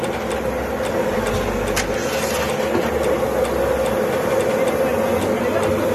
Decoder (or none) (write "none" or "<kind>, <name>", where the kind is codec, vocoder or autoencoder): none